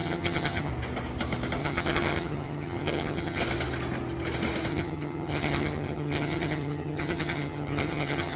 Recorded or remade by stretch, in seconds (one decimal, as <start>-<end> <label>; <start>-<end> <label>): 0.0-0.7 remade; 0.7-1.6 recorded; 1.6-3.4 remade; 3.4-4.7 recorded; 4.7-8.4 remade

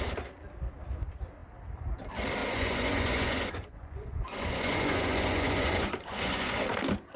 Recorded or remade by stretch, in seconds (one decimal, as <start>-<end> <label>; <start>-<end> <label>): 0.0-2.4 recorded; 2.4-6.6 remade; 6.6-7.2 recorded

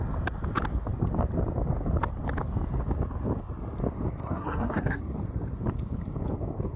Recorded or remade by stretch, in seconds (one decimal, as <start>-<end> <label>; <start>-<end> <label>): 0.0-4.2 recorded; 4.2-5.0 remade; 5.0-6.8 recorded

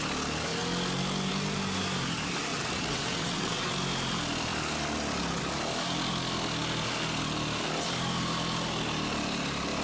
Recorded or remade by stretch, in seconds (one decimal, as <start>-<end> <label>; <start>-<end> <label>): 0.0-2.5 recorded; 2.5-3.7 remade; 3.7-9.8 recorded

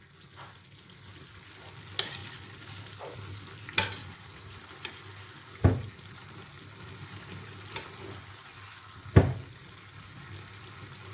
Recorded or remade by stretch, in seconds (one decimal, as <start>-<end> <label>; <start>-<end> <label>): 0.0-4.0 recorded; 4.0-4.6 remade; 4.6-11.1 recorded

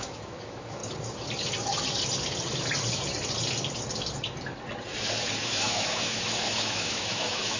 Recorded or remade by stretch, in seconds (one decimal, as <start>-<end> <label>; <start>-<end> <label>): 0.0-0.8 remade; 0.8-5.4 recorded; 5.4-7.6 remade